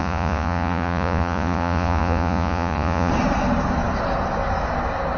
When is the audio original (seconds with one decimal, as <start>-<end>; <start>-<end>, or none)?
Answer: 3.1-5.2